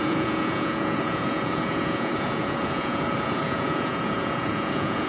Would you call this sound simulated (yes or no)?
yes